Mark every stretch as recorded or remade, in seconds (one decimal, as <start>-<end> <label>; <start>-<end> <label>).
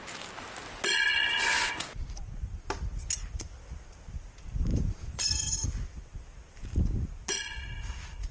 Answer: 0.0-4.7 recorded; 4.7-6.8 remade; 6.8-8.3 recorded